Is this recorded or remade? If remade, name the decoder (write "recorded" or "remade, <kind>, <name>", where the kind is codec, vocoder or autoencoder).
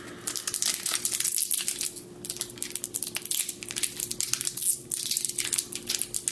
recorded